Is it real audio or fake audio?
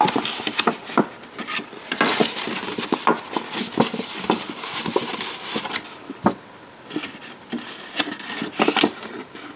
real